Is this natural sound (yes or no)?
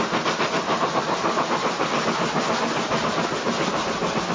yes